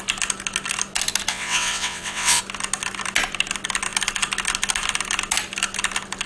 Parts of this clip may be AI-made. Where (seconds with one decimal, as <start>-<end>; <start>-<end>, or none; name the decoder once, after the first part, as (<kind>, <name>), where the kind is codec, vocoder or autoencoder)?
1.3-2.4 (vocoder, WaveNeXt)